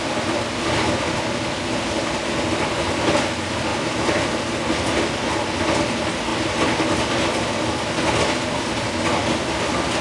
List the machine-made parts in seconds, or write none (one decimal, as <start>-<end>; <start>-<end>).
none